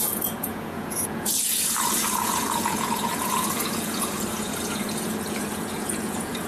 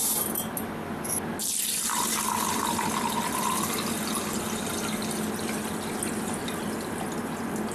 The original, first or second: second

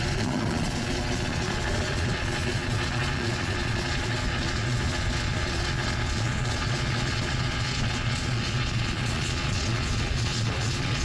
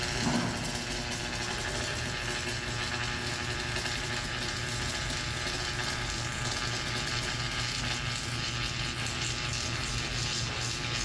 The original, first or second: second